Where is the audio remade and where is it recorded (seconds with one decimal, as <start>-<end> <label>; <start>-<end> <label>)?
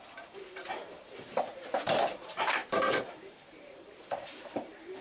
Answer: 0.0-5.0 remade